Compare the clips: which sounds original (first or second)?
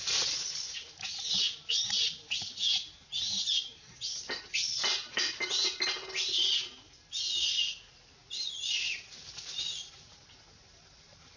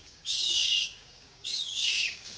first